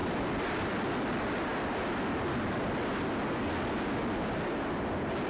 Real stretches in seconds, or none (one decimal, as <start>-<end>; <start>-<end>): 0.0-5.3